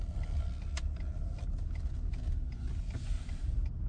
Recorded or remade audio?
recorded